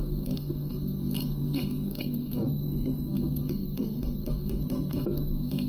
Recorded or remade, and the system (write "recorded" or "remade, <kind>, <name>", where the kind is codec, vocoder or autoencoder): remade, codec, SNAC